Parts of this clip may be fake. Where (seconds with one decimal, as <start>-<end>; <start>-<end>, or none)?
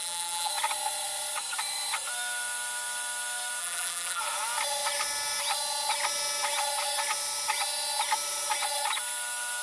0.0-0.5; 3.6-4.2